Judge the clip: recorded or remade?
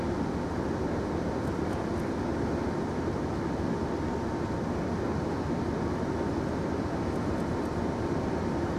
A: recorded